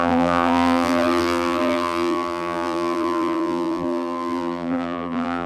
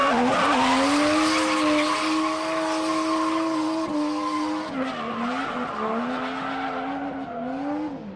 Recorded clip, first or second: second